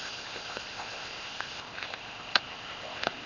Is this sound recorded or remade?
remade